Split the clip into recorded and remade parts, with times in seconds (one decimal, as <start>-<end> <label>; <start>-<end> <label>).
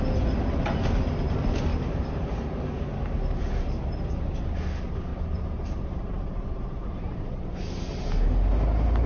0.0-1.7 recorded; 1.7-3.7 remade; 3.7-5.1 recorded; 5.1-7.4 remade; 7.4-9.1 recorded